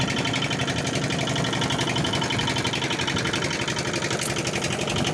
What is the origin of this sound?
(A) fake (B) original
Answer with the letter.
B